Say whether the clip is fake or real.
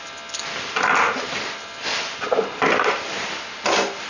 fake